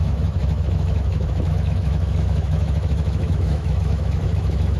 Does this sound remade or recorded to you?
remade